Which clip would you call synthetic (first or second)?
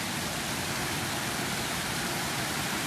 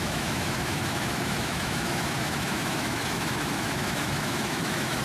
second